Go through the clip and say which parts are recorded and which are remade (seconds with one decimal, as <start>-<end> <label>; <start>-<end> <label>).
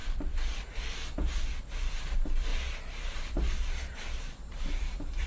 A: 0.0-0.8 remade; 0.8-2.5 recorded; 2.5-5.3 remade